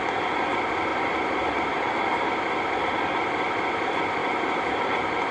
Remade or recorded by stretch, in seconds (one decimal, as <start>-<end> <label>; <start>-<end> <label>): 0.0-0.9 recorded; 0.9-1.5 remade; 1.5-4.2 recorded; 4.2-5.3 remade